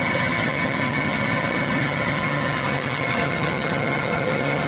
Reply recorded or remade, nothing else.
remade